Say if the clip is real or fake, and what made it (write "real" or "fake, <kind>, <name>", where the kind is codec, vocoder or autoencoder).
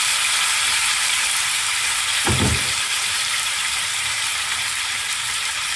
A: fake, vocoder, BigVGAN v2